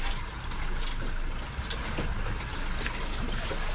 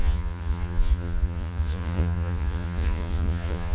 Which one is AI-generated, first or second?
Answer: second